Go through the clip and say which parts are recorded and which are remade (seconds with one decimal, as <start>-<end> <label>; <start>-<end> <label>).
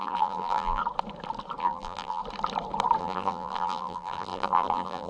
0.0-0.8 remade; 0.8-1.6 recorded; 1.6-2.2 remade; 2.2-3.0 recorded; 3.0-5.1 remade